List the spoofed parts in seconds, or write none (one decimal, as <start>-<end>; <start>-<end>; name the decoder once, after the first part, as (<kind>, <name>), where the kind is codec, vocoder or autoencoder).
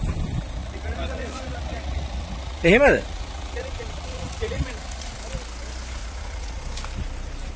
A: 0.6-5.1 (vocoder, Vocos); 6.0-6.6